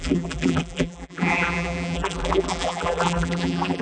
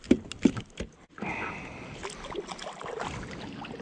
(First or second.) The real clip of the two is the second